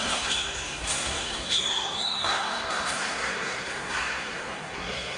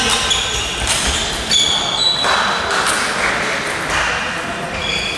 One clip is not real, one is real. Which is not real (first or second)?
first